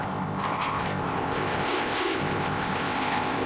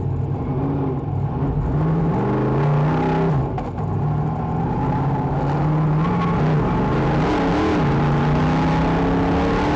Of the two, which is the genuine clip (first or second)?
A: second